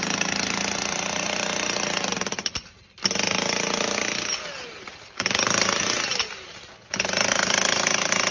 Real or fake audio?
real